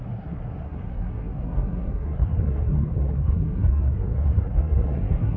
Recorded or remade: remade